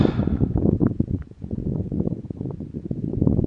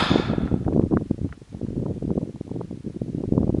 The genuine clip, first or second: second